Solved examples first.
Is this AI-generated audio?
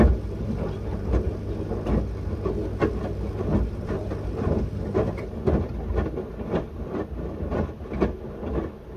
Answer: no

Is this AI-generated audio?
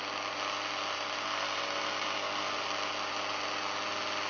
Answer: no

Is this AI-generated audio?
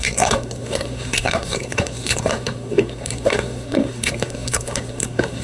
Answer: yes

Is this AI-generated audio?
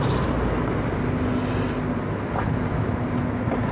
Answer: no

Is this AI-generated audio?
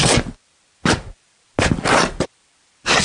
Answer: no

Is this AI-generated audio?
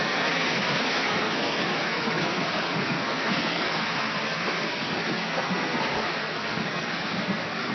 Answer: yes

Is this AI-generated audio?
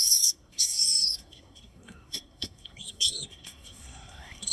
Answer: yes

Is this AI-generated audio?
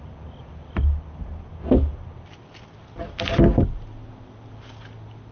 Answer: no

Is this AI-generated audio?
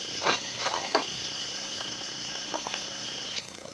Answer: yes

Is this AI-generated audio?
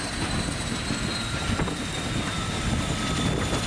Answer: no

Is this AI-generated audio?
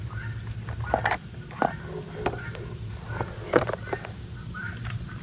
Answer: no